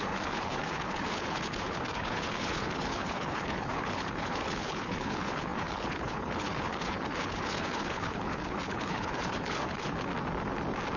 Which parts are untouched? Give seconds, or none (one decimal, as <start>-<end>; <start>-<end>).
10.1-11.0

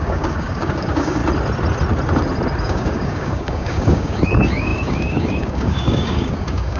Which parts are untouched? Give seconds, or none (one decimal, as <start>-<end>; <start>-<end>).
1.2-2.6

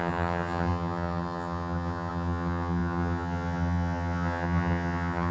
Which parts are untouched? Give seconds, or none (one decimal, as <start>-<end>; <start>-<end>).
none

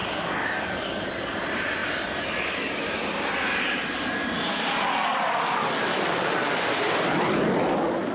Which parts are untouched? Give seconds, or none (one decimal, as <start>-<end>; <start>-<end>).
1.0-8.1

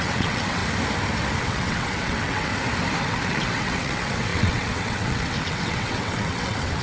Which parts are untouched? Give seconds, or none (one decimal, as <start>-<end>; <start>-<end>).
0.6-1.4; 2.5-3.0

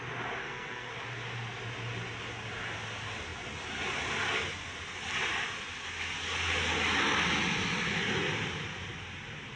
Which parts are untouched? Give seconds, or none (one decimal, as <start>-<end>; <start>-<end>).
0.0-0.4; 0.9-9.6

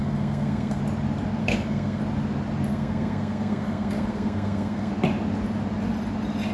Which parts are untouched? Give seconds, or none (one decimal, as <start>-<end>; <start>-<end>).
0.8-1.4; 2.0-2.7; 4.9-6.5